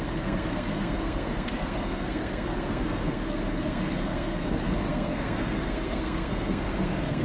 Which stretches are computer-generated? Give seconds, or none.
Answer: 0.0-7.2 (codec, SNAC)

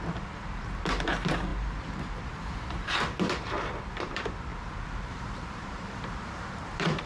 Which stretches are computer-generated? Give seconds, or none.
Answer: 0.0-4.5 (vocoder, BigVGAN v2); 5.0-7.1

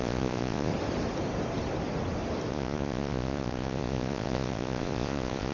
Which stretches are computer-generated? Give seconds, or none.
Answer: 0.0-0.7 (vocoder, Vocos); 2.5-5.5

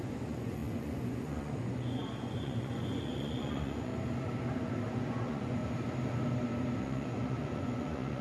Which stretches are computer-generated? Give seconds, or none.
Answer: 0.0-3.9 (vocoder, Vocos); 4.9-5.6; 6.8-8.2

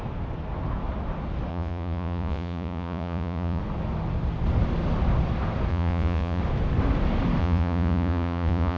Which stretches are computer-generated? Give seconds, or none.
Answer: 1.5-3.6 (vocoder, Vocos); 5.7-6.4; 7.4-8.8

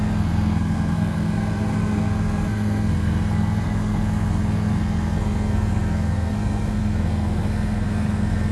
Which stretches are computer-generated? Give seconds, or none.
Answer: 0.0-8.5 (codec, SNAC)

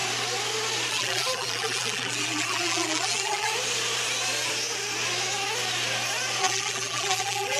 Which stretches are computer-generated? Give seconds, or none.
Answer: 0.9-3.5 (vocoder, BigVGAN v2); 6.4-7.6